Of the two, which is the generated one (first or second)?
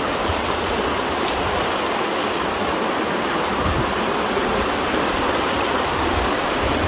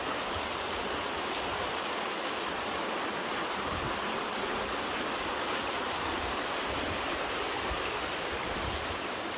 second